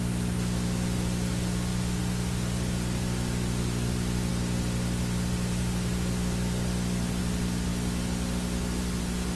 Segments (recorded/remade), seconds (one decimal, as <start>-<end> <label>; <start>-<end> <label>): 0.0-9.4 recorded